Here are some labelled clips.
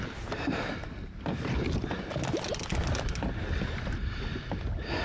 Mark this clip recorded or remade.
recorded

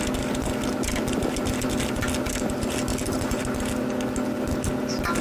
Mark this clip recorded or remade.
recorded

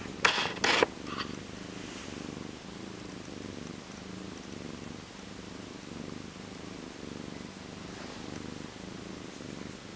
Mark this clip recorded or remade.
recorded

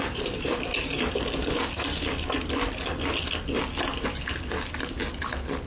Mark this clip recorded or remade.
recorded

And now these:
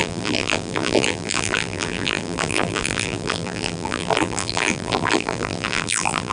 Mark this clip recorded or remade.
remade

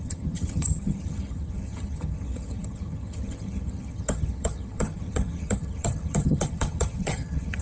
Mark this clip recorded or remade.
remade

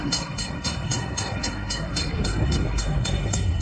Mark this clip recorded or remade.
remade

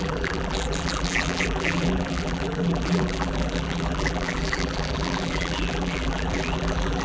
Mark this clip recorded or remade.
remade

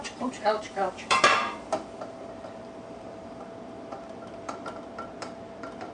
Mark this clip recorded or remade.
remade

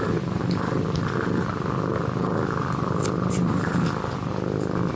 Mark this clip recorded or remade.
recorded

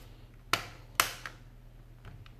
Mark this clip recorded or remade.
recorded